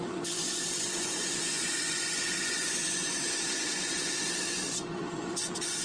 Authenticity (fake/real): fake